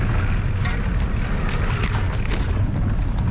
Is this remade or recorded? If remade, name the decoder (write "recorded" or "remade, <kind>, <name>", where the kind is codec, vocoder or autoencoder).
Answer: recorded